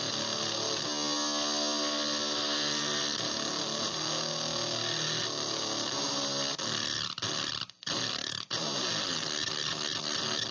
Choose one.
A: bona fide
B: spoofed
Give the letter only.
A